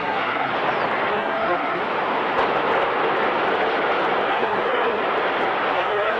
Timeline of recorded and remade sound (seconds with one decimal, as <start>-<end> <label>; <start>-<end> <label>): 0.0-0.5 remade; 0.5-1.1 recorded; 1.1-1.8 remade; 1.8-4.3 recorded; 4.3-5.0 remade; 5.0-5.7 recorded; 5.7-6.2 remade